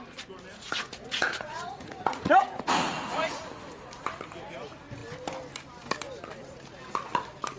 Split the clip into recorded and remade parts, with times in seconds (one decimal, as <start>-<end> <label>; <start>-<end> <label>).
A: 0.0-0.5 recorded; 0.5-3.4 remade; 3.4-7.6 recorded